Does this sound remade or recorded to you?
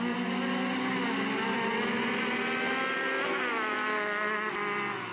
recorded